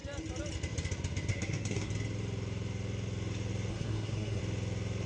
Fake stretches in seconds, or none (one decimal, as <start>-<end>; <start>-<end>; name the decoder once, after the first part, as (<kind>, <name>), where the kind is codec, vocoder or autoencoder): 1.3-1.9 (codec, SNAC); 3.7-4.4